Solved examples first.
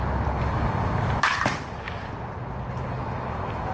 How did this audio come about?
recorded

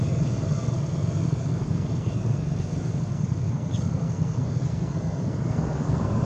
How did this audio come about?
remade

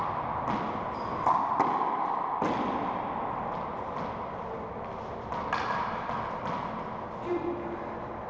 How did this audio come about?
recorded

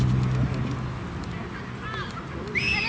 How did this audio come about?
recorded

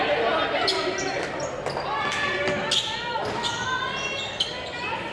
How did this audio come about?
recorded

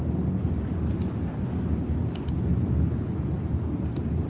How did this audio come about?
recorded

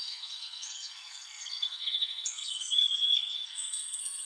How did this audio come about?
remade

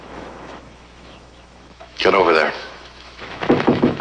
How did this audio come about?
remade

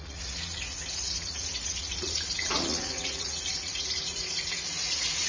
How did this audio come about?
remade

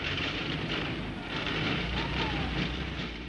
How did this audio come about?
remade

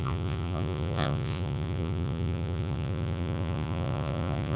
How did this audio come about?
remade